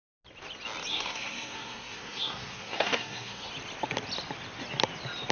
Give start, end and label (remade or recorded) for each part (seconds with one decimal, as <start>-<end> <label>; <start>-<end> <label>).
0.0-0.9 recorded; 0.9-3.5 remade; 3.5-5.3 recorded